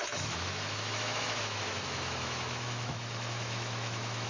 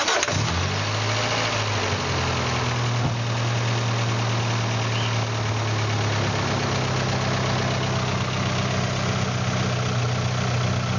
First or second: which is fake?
first